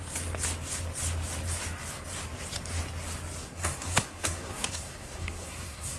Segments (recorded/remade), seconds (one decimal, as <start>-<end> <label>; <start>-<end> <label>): 0.0-3.4 recorded; 3.4-6.0 remade